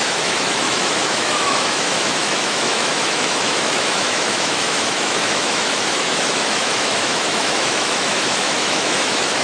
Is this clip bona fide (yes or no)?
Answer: no